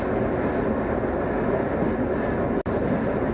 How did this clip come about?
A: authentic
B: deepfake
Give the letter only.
A